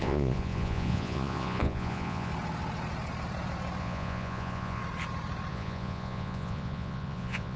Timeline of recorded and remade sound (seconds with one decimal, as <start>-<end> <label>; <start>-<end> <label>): 0.0-2.3 remade; 2.3-3.8 recorded; 3.8-4.8 remade; 4.8-5.5 recorded; 5.5-7.6 remade